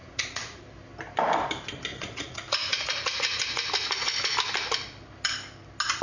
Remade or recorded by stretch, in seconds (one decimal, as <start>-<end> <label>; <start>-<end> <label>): 0.0-0.6 remade; 0.6-1.9 recorded; 1.9-4.3 remade; 4.3-6.0 recorded